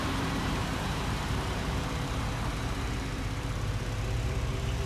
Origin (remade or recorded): remade